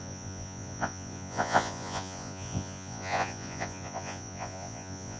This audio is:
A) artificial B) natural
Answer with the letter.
A